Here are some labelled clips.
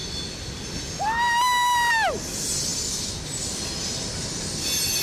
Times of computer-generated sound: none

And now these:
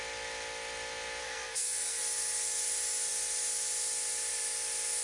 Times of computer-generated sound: 1.2-2.0 (codec, SNAC)

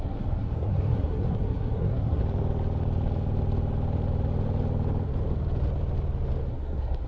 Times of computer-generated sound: 0.0-2.2 (codec, SNAC); 6.5-7.1

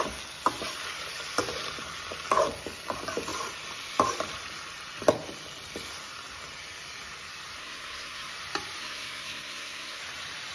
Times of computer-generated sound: 7.6-8.3 (codec, SNAC); 8.8-10.0

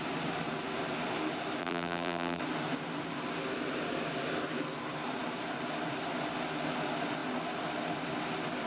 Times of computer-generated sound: 1.6-2.4 (vocoder, BigVGAN v2)

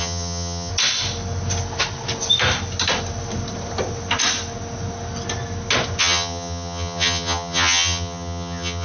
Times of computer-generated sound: 0.0-0.7 (vocoder, HiFi-GAN); 6.0-8.8